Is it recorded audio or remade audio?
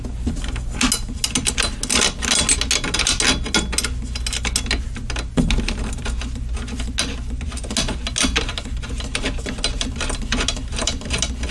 recorded